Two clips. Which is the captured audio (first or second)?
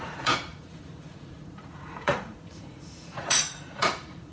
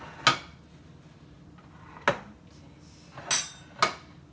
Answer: second